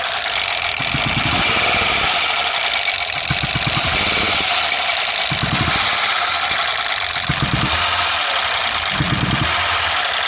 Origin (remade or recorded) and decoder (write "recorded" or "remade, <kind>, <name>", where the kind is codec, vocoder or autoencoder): recorded